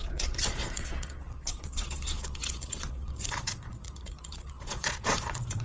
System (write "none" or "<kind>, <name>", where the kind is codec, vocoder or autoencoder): vocoder, Vocos